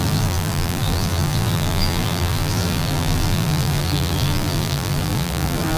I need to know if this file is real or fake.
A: fake